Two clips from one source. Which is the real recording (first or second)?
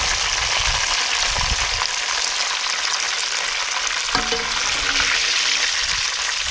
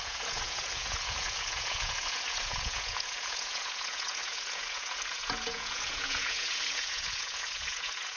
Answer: first